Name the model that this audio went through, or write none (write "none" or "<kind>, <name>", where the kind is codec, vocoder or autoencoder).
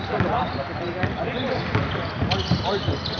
none